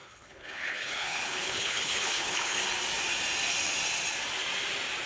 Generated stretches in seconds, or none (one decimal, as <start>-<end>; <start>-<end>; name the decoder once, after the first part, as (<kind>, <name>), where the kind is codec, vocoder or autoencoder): 0.0-2.6 (codec, HILCodec)